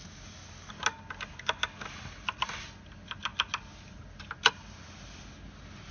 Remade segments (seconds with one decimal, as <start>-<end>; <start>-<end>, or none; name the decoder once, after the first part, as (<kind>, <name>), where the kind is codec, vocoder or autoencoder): 0.0-0.7 (codec, DAC)